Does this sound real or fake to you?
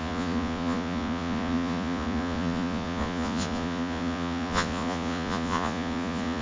fake